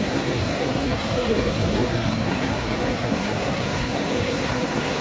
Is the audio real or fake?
fake